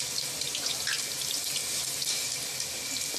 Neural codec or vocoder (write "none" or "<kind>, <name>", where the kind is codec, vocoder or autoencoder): none